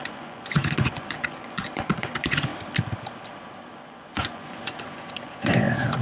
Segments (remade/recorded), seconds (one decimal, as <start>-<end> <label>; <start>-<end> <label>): 0.0-2.5 remade; 2.5-3.7 recorded; 3.7-6.0 remade